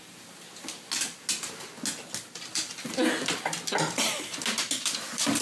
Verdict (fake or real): real